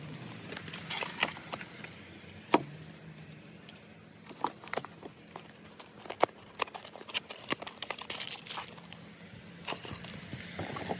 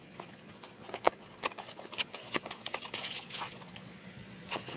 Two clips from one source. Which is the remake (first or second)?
second